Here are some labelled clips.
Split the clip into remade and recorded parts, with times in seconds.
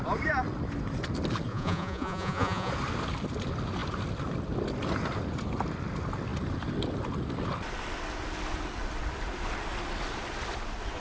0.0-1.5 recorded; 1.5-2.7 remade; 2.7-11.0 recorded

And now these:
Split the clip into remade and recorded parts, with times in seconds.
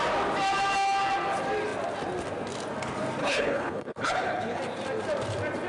0.0-3.2 recorded; 3.2-4.6 remade; 4.6-5.7 recorded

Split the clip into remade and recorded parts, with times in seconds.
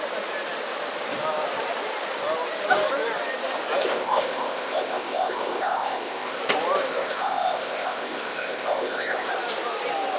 0.0-3.8 recorded; 3.8-6.4 remade; 6.4-6.9 recorded; 6.9-9.3 remade; 9.3-10.2 recorded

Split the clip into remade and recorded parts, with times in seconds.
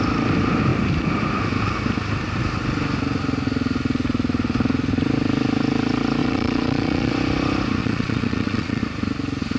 0.0-6.2 recorded; 6.2-7.1 remade; 7.1-7.8 recorded; 7.8-8.8 remade; 8.8-9.6 recorded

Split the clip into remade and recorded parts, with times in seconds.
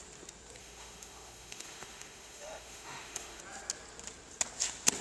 0.0-0.6 recorded; 0.6-3.4 remade; 3.4-5.0 recorded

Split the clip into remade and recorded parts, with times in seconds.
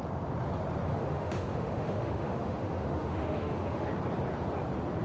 0.0-0.9 recorded; 0.9-3.9 remade; 3.9-5.0 recorded